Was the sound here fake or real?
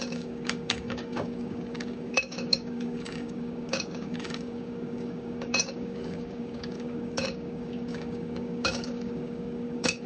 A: fake